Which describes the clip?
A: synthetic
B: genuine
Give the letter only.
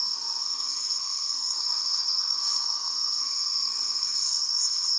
A